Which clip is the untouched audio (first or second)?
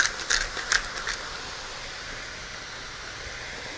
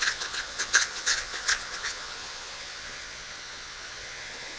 first